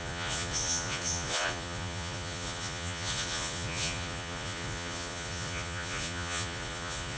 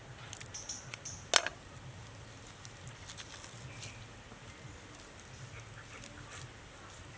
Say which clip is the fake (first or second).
first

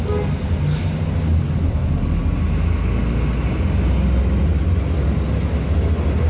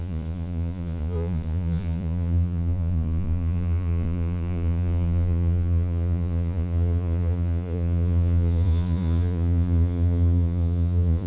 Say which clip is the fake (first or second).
second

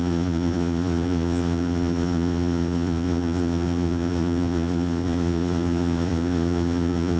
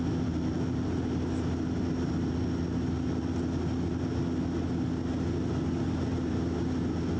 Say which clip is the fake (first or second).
first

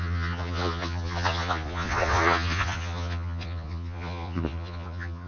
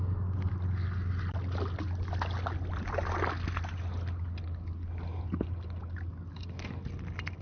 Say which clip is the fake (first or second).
first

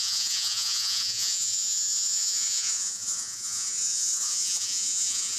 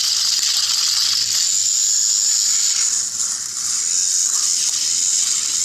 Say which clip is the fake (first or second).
first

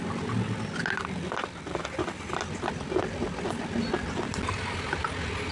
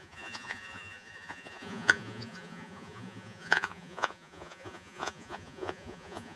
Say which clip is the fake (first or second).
second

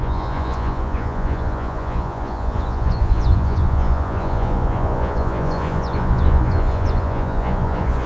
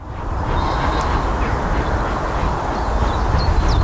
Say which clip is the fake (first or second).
first